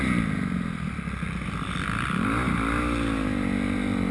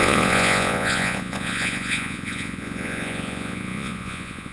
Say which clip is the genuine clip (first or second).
first